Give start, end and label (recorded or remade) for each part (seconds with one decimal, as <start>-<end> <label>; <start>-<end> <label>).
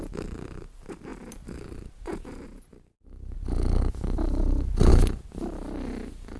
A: 0.0-6.4 recorded